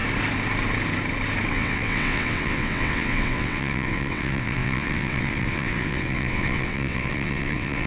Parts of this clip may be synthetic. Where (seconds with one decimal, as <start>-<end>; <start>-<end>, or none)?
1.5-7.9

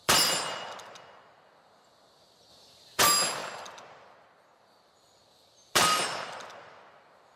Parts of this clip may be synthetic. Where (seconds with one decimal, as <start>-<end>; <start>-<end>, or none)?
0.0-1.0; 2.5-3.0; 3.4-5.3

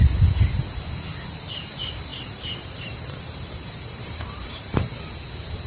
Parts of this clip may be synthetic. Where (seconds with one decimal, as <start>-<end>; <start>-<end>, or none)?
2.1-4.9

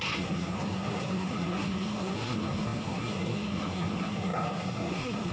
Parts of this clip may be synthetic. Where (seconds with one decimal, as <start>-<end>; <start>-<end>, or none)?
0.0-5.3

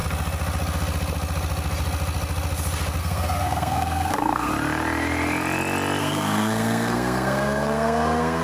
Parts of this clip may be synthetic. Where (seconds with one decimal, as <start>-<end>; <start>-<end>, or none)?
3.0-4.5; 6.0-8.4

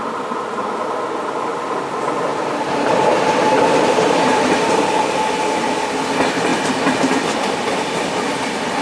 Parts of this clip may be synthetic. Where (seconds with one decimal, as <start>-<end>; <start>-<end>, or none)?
2.3-5.0

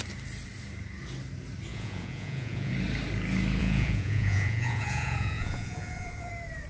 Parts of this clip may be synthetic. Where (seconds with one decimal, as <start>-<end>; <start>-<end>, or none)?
1.7-2.7; 3.6-6.3

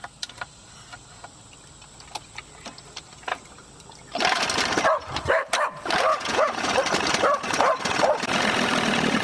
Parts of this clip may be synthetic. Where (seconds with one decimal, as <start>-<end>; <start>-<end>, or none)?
6.1-6.7